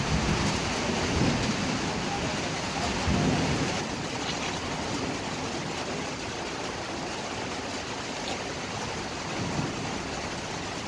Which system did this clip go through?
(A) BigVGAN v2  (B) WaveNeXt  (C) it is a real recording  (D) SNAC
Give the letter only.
C